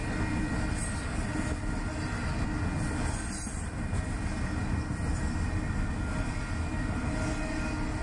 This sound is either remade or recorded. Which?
recorded